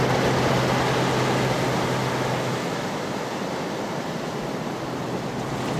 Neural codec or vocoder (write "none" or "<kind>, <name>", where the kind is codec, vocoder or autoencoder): none